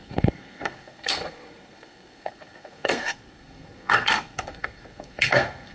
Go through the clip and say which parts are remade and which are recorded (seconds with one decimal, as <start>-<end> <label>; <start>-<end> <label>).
0.0-5.7 remade